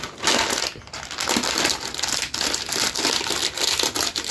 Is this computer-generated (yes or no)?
no